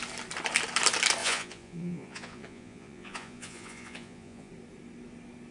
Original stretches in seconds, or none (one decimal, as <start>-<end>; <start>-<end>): 0.0-1.2; 4.5-5.5